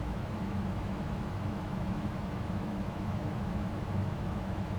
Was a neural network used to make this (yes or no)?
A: yes